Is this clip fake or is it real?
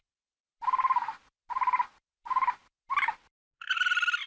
real